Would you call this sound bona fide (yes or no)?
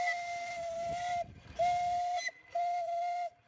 yes